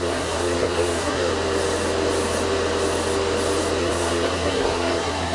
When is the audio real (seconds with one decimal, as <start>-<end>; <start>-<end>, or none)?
1.3-3.8